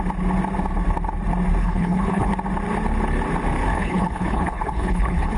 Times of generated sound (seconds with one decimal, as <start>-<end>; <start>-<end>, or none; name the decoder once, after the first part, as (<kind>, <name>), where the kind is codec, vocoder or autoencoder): 1.6-2.3 (codec, HILCodec); 3.7-5.4